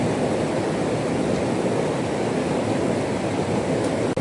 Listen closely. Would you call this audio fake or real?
real